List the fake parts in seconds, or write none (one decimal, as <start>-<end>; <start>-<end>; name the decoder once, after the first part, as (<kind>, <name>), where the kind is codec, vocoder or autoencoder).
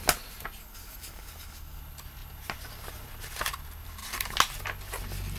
0.6-1.8 (codec, DAC)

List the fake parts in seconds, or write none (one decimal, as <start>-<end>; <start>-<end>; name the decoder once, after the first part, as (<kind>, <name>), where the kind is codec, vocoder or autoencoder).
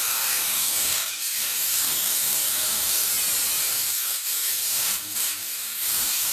0.0-3.1 (codec, DAC); 3.6-6.3